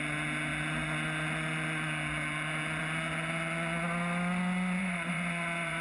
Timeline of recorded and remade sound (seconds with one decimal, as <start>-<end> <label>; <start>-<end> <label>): 0.0-4.8 recorded; 4.8-5.8 remade